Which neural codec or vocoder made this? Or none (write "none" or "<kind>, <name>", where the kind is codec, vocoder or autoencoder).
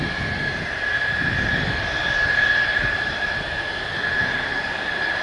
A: none